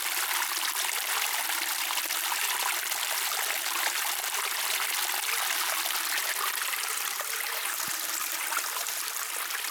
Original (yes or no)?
yes